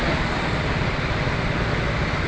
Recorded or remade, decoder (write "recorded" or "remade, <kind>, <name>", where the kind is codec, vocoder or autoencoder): recorded